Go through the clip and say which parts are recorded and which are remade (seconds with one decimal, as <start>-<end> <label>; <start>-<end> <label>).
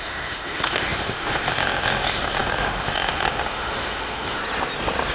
0.0-4.4 remade; 4.4-5.1 recorded